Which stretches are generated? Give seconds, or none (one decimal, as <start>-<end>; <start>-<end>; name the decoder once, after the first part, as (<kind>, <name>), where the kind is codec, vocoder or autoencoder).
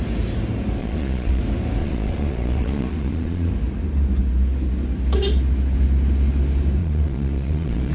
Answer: 0.8-1.4 (vocoder, Vocos); 1.8-3.5; 6.8-7.9